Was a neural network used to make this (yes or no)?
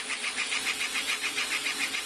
no